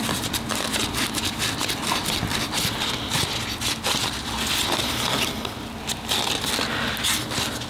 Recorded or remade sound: recorded